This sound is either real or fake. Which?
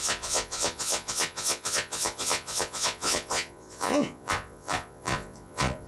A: fake